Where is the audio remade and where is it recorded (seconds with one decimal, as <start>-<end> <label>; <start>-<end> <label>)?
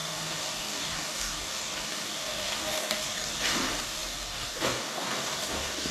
0.0-5.9 remade